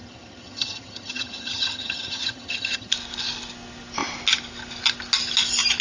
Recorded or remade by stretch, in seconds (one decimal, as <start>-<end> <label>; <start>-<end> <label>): 0.0-2.9 remade; 2.9-5.8 recorded